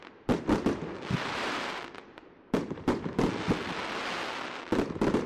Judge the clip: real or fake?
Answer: real